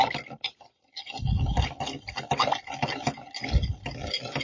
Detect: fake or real real